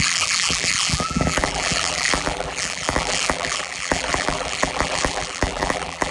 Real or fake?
fake